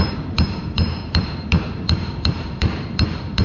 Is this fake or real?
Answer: fake